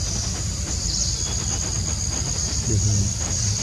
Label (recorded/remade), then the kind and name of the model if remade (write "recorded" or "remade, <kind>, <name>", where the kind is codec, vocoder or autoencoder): recorded